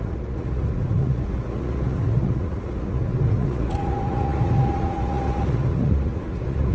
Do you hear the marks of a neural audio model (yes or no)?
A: yes